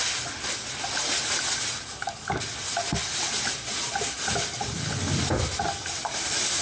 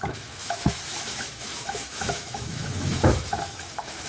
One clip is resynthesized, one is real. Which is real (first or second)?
first